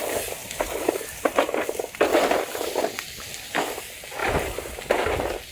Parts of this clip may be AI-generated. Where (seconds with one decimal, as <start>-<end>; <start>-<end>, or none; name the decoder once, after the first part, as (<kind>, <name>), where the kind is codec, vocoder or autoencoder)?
0.4-1.7 (vocoder, BigVGAN v2); 2.1-2.9; 4.2-4.9